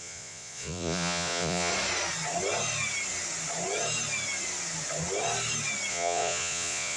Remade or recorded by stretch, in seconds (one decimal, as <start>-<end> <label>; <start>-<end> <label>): 0.0-1.7 remade; 1.7-5.9 recorded; 5.9-7.0 remade